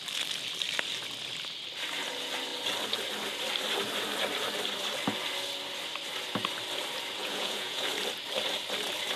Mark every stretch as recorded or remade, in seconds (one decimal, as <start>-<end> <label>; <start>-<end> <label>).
0.0-7.2 recorded; 7.2-7.9 remade; 7.9-9.2 recorded